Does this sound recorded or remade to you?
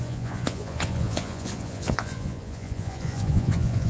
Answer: remade